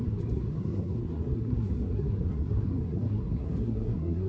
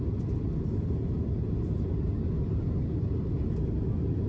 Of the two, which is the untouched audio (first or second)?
second